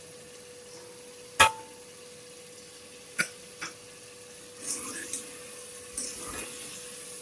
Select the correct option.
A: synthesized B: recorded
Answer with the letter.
B